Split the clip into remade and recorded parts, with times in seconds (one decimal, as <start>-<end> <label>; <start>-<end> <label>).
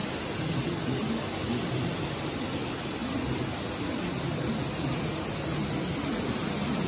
0.0-6.9 recorded